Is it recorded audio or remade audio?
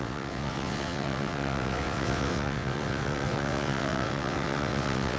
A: remade